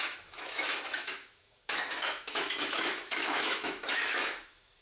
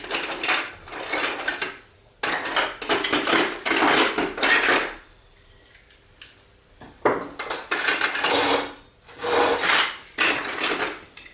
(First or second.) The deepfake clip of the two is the first